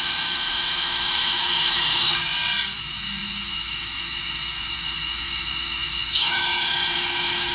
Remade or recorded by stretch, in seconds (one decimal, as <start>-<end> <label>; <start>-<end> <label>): 0.0-2.3 remade; 2.3-2.8 recorded; 2.8-7.5 remade